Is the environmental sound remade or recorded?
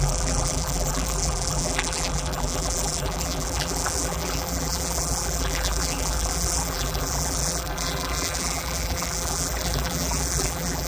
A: remade